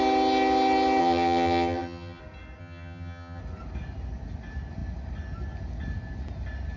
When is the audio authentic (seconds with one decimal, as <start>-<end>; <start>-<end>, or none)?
0.0-1.0; 2.2-2.6; 3.4-6.8